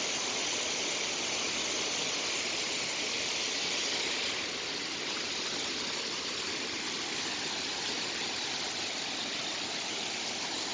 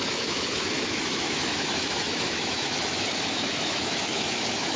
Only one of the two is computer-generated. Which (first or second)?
second